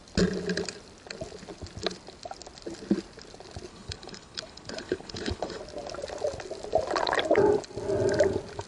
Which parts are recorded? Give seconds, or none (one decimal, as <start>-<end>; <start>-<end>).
0.0-3.7; 5.6-8.7